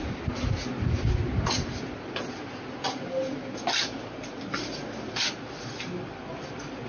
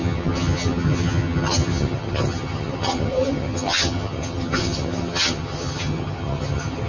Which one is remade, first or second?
second